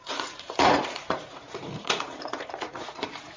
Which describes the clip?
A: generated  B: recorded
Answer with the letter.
A